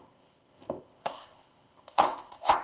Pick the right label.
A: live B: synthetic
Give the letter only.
B